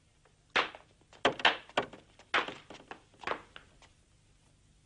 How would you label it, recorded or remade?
recorded